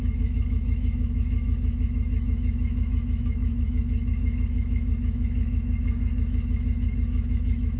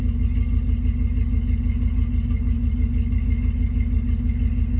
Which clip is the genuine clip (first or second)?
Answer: second